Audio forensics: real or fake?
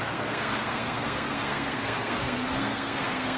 fake